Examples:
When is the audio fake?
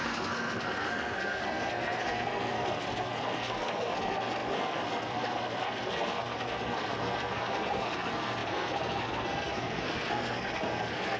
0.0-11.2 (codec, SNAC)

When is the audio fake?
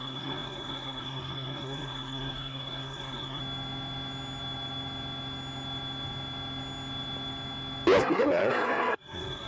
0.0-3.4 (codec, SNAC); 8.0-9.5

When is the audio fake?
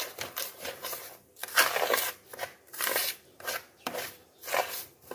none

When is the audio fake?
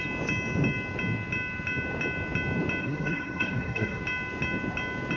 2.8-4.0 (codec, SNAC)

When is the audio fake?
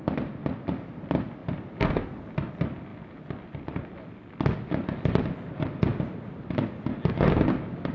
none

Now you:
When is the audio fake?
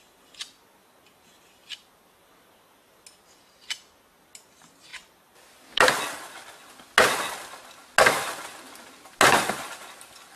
none